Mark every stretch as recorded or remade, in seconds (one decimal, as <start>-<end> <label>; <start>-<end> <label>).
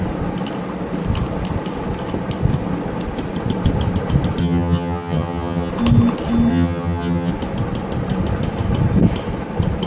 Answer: 0.0-4.4 recorded; 4.4-5.7 remade; 5.7-6.5 recorded; 6.5-7.3 remade; 7.3-9.9 recorded